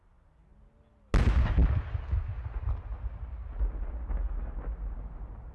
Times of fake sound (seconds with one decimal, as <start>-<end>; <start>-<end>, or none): none